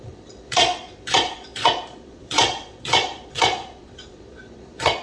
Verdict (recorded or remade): remade